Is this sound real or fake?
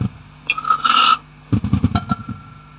real